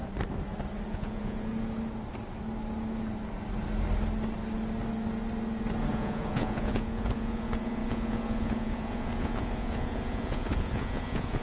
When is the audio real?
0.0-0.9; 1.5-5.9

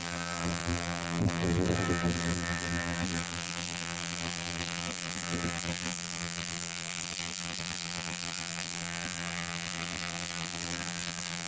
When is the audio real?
none

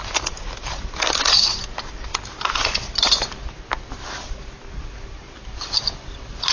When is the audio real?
0.0-6.5

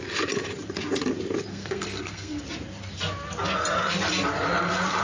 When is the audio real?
0.0-1.5; 2.4-5.0

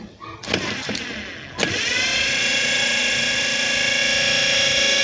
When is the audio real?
0.0-2.1; 3.4-5.0

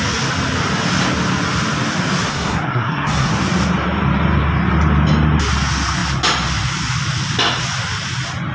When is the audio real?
0.0-2.3; 3.3-8.5

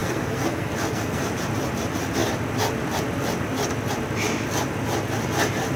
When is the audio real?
1.2-5.8